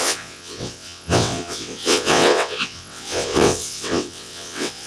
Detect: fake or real fake